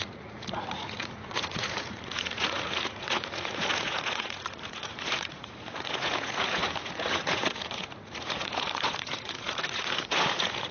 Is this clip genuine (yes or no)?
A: no